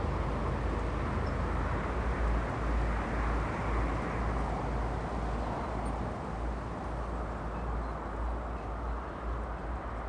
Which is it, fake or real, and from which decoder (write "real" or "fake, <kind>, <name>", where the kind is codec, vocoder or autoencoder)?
real